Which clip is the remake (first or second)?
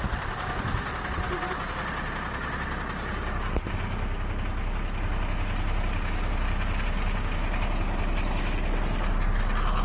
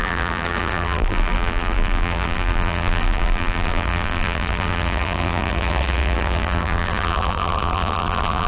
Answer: second